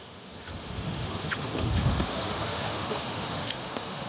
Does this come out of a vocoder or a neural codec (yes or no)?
yes